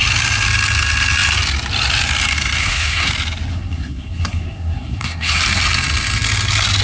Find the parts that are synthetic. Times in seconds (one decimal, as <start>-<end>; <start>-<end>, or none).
2.6-3.1; 3.5-5.4